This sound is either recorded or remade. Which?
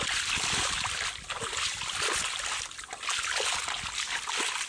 recorded